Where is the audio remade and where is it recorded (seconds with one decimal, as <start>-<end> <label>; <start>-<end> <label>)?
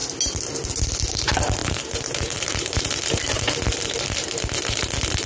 0.0-1.6 recorded; 1.6-3.5 remade; 3.5-5.3 recorded